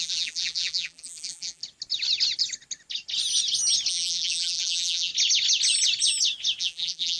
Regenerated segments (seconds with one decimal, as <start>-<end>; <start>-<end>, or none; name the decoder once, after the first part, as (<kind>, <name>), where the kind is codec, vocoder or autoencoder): 0.0-1.6 (vocoder, BigVGAN v2); 3.9-5.1; 6.6-7.2